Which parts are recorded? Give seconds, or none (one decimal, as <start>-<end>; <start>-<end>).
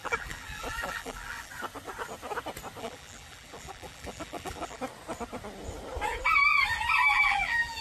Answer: 1.5-2.8; 4.8-7.1